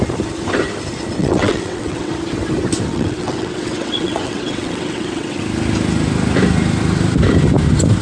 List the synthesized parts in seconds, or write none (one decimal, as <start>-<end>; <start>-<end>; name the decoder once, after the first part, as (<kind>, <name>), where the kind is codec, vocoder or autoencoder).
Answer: 1.2-2.1 (vocoder, WaveNeXt); 2.9-5.4